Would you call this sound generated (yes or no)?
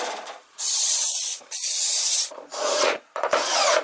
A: yes